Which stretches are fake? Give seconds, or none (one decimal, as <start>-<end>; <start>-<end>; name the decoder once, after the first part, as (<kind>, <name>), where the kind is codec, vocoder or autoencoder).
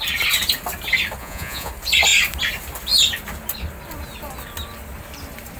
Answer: 1.2-1.7 (vocoder, Vocos)